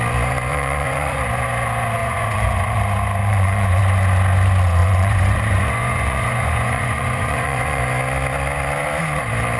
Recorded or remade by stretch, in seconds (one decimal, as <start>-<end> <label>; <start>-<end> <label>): 0.0-0.5 recorded; 0.5-1.2 remade; 1.2-2.0 recorded; 2.0-2.8 remade; 2.8-3.2 recorded; 3.2-3.8 remade; 3.8-4.8 recorded; 4.8-7.8 remade; 7.8-9.6 recorded